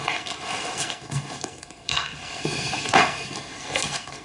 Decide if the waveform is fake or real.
fake